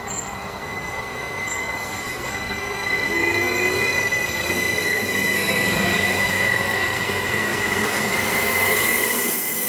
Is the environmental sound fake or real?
fake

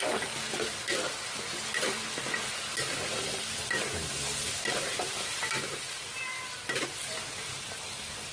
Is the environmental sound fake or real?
real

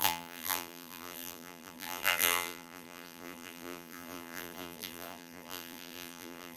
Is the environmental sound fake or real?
fake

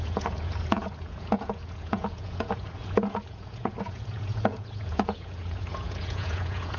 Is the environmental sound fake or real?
fake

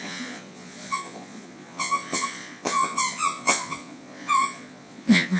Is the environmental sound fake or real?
fake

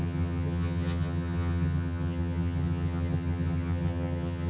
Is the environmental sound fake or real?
fake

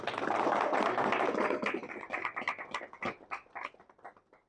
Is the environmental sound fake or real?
real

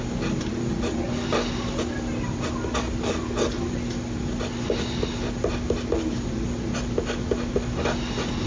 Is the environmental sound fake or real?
real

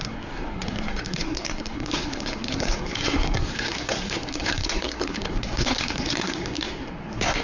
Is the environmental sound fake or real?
fake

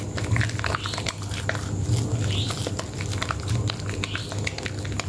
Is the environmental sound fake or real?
real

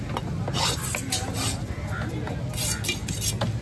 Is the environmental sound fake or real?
real